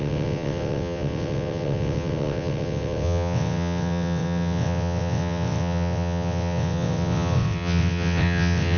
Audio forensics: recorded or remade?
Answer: remade